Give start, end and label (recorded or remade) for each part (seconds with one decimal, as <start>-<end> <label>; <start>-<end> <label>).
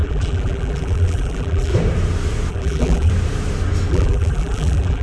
0.0-1.7 remade; 1.7-2.5 recorded; 2.5-3.1 remade; 3.1-3.9 recorded; 3.9-5.0 remade